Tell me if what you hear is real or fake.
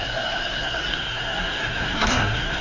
fake